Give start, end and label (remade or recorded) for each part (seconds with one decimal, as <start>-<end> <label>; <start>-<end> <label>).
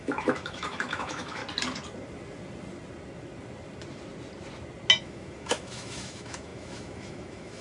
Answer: 0.0-1.4 remade; 1.4-5.0 recorded; 5.0-7.6 remade